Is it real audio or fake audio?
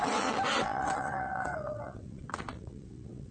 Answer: fake